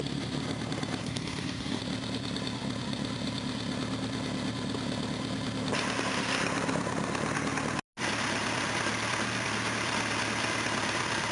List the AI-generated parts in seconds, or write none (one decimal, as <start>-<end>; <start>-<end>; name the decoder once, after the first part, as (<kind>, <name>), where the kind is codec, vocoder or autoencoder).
1.0-1.8 (codec, SNAC)